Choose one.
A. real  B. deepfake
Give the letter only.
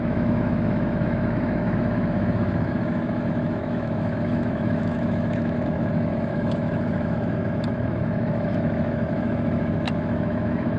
B